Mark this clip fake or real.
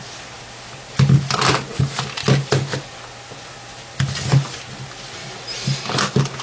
real